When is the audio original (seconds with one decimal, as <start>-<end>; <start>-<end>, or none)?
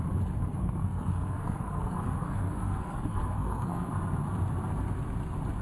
0.0-0.5; 3.9-5.6